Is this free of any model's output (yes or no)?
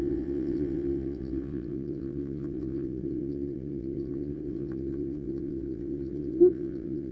no